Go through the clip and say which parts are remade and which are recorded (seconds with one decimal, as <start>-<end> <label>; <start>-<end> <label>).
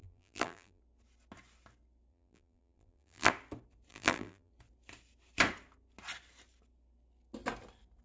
0.0-0.8 remade; 0.8-2.1 recorded; 2.1-3.3 remade; 3.3-3.9 recorded; 3.9-4.5 remade; 4.5-8.0 recorded